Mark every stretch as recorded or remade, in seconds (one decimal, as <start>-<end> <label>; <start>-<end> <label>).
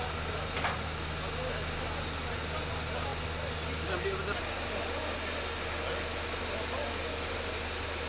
0.0-8.1 recorded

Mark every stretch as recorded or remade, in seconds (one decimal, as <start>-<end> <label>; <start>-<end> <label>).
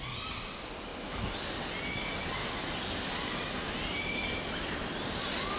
0.0-5.6 recorded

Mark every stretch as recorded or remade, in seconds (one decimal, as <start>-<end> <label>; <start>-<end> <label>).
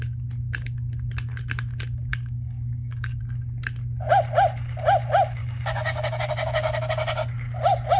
0.0-2.1 recorded; 2.1-3.2 remade; 3.2-5.4 recorded; 5.4-6.3 remade; 6.3-8.0 recorded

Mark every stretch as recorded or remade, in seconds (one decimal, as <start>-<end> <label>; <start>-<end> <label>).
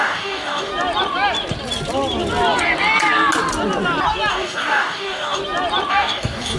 0.0-0.7 remade; 0.7-4.3 recorded; 4.3-5.4 remade; 5.4-5.9 recorded; 5.9-6.6 remade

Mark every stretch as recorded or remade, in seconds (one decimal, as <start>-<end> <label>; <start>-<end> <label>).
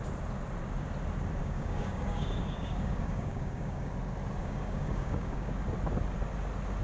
0.0-1.4 recorded; 1.4-3.9 remade; 3.9-4.4 recorded; 4.4-5.6 remade; 5.6-6.8 recorded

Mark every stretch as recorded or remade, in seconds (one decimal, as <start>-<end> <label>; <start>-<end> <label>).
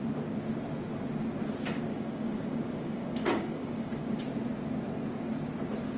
0.0-1.9 recorded; 1.9-4.2 remade; 4.2-6.0 recorded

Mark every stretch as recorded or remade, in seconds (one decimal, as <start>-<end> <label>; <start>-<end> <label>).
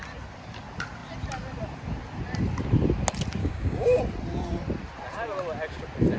0.0-3.4 recorded; 3.4-4.0 remade; 4.0-6.2 recorded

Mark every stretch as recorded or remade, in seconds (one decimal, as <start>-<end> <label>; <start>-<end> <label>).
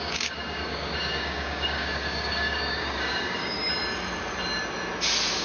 0.0-3.6 remade; 3.6-5.4 recorded